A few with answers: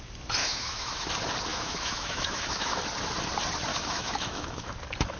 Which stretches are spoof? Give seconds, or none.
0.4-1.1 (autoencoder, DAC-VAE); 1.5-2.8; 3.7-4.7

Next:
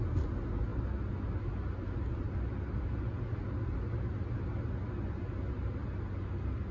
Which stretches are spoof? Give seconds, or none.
none

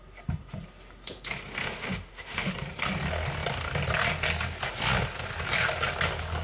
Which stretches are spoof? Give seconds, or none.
1.6-2.5 (autoencoder, DAC-VAE)

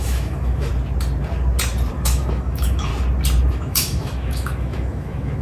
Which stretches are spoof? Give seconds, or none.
0.0-0.7 (autoencoder, DAC-VAE); 1.9-2.9; 3.5-5.4

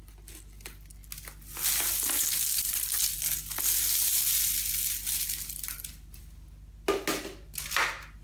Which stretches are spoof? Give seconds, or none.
none